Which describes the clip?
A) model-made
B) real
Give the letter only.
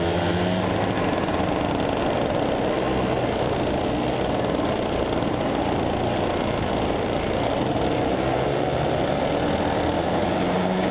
B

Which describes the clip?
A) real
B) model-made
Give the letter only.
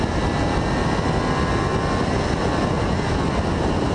A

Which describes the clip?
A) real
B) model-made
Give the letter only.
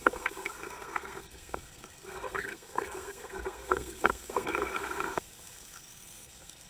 B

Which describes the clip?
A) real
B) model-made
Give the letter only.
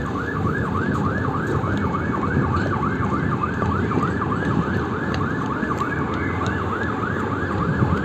A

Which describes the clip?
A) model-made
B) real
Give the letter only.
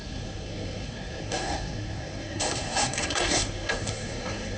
A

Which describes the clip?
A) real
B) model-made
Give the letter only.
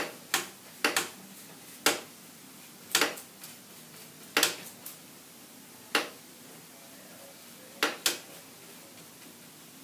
A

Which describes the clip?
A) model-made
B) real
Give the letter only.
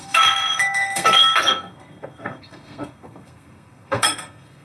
A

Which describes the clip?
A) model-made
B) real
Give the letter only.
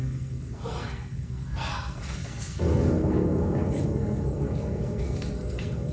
A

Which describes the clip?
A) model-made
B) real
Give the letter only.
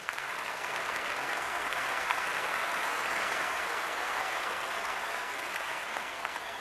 A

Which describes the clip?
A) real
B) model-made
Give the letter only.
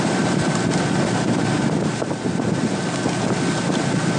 A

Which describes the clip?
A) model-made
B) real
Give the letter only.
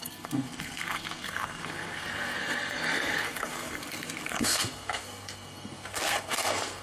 A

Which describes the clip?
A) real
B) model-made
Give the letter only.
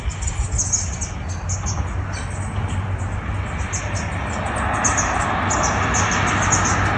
A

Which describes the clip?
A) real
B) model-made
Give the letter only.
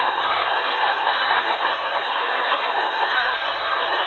B